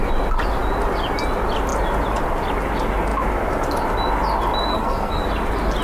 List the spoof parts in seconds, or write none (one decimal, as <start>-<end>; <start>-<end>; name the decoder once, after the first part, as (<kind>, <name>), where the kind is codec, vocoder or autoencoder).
4.7-5.2 (codec, SNAC)